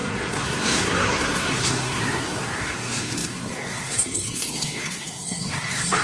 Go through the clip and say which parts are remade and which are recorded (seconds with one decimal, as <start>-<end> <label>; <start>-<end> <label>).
0.0-6.0 remade